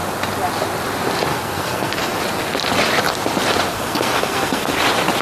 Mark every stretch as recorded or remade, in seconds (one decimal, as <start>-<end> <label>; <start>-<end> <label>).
0.0-1.3 recorded; 1.3-2.2 remade; 2.2-3.7 recorded; 3.7-4.8 remade; 4.8-5.2 recorded